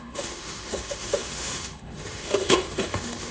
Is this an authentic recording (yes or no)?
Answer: no